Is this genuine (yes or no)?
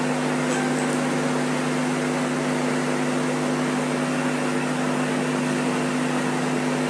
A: yes